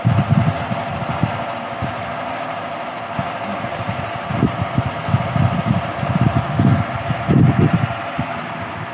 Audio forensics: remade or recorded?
recorded